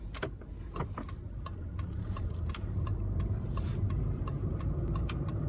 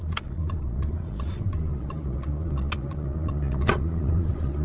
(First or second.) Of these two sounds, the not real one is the second